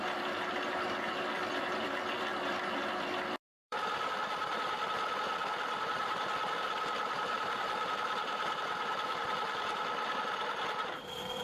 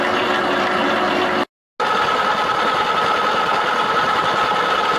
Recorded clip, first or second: second